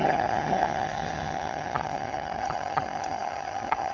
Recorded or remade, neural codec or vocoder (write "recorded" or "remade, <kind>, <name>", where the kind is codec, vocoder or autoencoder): remade, vocoder, HiFi-GAN